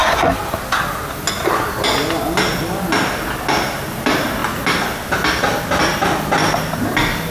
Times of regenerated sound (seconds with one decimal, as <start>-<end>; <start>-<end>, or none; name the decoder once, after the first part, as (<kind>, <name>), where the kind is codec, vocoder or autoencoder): none